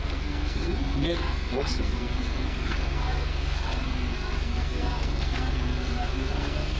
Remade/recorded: remade